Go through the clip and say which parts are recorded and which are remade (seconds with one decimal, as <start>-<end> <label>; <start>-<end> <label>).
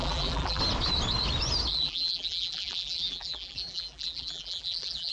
0.0-0.6 remade; 0.6-1.7 recorded; 1.7-5.1 remade